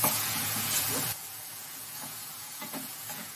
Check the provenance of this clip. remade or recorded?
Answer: remade